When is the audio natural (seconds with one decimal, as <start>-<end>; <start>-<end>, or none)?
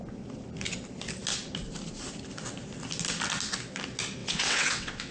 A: 0.0-4.2